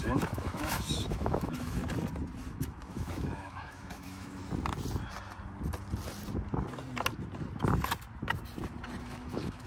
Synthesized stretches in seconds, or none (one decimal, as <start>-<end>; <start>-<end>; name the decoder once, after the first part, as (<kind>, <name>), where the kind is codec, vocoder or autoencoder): 0.0-1.8 (autoencoder, DAC-VAE); 2.5-4.4; 9.0-9.7